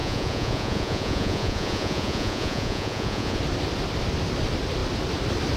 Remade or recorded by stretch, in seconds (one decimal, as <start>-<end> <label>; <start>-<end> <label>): 0.0-3.4 remade; 3.4-5.6 recorded